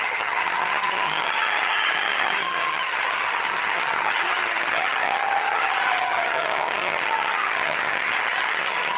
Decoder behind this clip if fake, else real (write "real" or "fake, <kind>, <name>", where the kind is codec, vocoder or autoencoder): fake, vocoder, HiFi-GAN